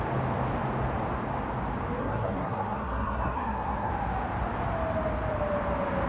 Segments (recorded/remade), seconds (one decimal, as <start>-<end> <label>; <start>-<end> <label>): 0.0-2.0 recorded; 2.0-3.9 remade; 3.9-6.1 recorded